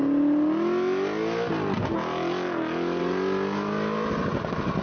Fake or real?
real